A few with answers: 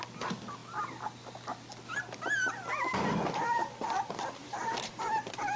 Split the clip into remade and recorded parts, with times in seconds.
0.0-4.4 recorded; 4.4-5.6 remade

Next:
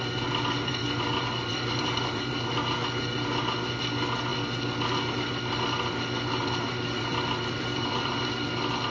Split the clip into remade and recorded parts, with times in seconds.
0.0-0.7 recorded; 0.7-2.3 remade; 2.3-4.3 recorded; 4.3-8.5 remade; 8.5-8.9 recorded

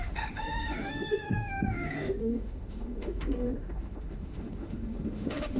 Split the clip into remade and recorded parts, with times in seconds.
0.0-5.6 remade

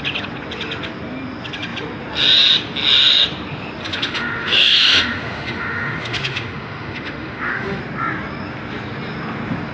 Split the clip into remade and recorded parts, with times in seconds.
0.0-3.8 recorded; 3.8-7.8 remade; 7.8-9.7 recorded

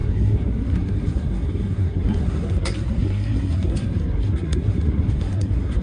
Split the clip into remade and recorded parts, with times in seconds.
0.0-5.8 remade

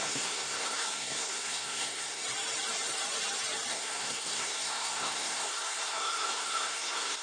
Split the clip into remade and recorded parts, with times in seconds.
0.0-2.2 remade; 2.2-3.7 recorded; 3.7-7.2 remade

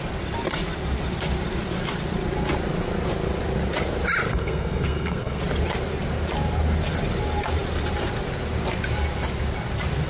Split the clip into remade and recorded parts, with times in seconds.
0.0-4.3 recorded; 4.3-5.4 remade; 5.4-10.1 recorded

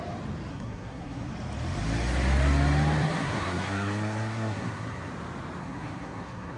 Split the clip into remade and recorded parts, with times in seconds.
0.0-0.5 recorded; 0.5-1.3 remade; 1.3-3.0 recorded; 3.0-5.1 remade; 5.1-5.6 recorded; 5.6-6.6 remade